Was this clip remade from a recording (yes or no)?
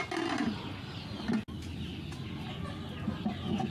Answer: no